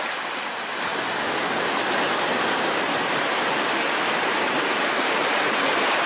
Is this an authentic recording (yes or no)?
yes